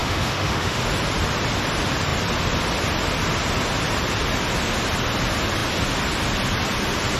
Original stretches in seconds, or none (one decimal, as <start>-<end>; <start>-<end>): 0.8-7.2